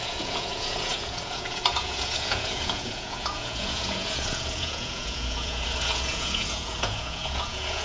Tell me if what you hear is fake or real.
fake